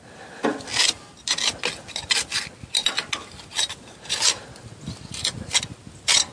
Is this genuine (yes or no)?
yes